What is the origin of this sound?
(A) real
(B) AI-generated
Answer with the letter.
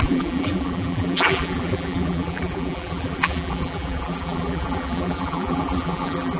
B